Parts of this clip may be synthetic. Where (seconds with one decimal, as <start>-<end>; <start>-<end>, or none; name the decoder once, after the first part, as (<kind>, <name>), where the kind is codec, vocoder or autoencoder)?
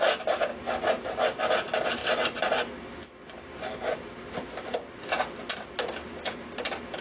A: none